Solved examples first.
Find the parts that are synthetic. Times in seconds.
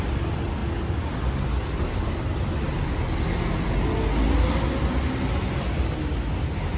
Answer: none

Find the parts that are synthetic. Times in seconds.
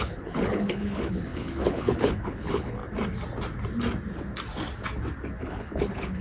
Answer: 0.0-2.8 (codec, HILCodec); 5.4-6.2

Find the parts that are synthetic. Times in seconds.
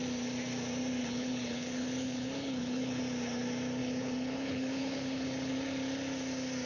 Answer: 1.0-3.0 (codec, HILCodec); 3.8-5.5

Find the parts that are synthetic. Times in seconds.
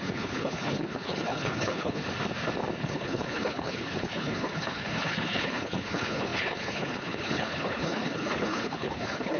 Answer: 0.0-2.0 (codec, HILCodec); 2.8-9.4